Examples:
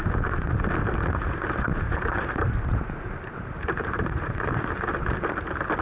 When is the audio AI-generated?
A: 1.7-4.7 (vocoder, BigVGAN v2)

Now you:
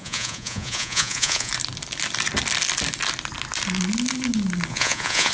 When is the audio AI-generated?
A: 0.0-1.5 (vocoder, Vocos); 4.7-5.3

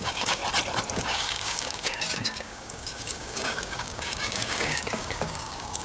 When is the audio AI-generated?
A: 0.0-0.4 (codec, DAC); 0.9-5.8

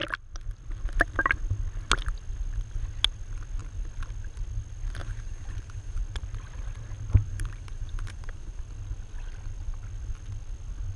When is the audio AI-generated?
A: 5.0-6.0 (vocoder, BigVGAN v2); 7.3-8.6

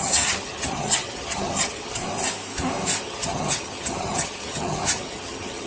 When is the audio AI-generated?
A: 0.0-2.0 (vocoder, HiFi-GAN); 3.0-5.7

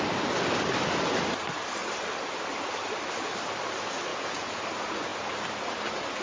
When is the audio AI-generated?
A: 4.1-4.6 (vocoder, Vocos)

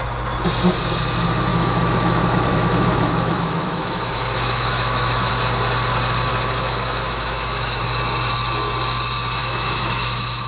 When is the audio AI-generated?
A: 1.5-5.3 (autoencoder, DAC-VAE); 6.3-7.8; 9.4-10.5